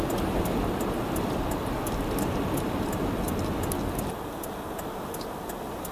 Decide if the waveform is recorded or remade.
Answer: recorded